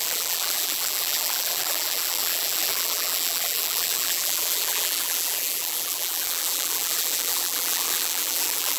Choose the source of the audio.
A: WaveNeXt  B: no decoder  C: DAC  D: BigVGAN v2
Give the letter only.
D